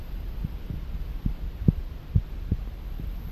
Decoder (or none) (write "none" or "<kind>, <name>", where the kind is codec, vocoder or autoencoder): none